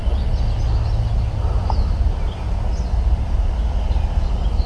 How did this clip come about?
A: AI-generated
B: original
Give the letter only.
B